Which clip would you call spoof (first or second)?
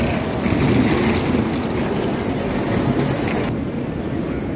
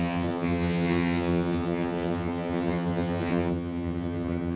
second